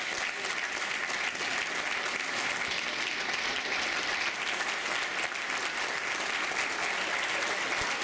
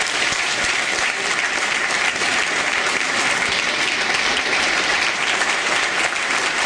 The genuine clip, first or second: first